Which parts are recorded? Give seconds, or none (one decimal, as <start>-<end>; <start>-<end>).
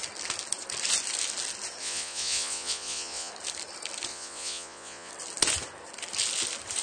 0.0-1.8; 3.3-4.1; 5.1-6.8